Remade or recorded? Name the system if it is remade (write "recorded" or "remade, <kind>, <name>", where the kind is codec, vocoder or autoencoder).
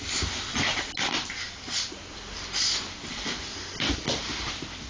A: recorded